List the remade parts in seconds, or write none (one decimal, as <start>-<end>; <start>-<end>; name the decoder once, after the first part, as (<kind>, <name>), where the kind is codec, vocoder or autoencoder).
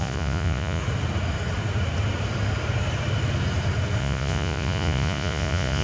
0.0-0.8 (vocoder, Vocos); 4.0-5.8